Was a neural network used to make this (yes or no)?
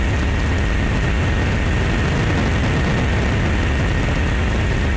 no